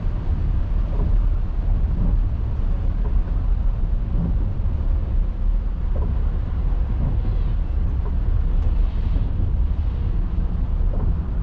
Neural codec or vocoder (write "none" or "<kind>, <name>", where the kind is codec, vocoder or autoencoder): none